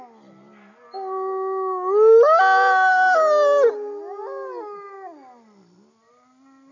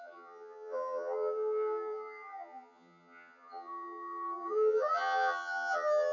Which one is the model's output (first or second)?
second